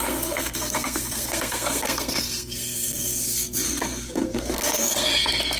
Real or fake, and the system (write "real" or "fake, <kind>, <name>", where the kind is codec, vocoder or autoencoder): fake, codec, SNAC